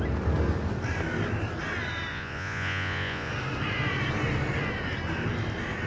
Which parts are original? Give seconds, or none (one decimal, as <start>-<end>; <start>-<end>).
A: 0.0-2.1; 3.3-5.9